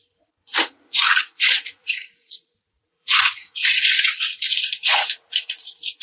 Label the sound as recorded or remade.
remade